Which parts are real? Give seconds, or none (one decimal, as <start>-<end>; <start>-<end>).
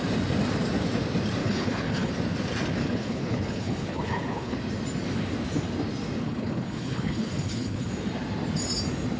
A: 0.0-1.4; 2.1-2.8; 4.6-6.2; 7.9-9.2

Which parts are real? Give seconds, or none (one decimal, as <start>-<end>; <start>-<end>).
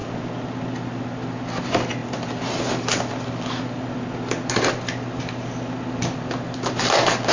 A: 0.0-7.3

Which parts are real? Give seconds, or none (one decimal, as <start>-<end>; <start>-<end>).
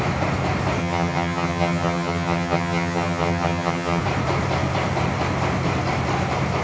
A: 0.0-0.8; 4.0-6.6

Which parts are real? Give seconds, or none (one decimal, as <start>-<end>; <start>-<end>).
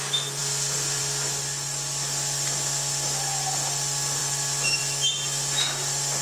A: 0.0-6.2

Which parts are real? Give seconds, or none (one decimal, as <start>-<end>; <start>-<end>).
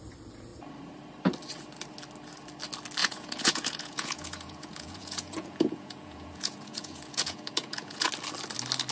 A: 0.0-3.0; 8.1-8.9